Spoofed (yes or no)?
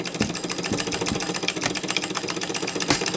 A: no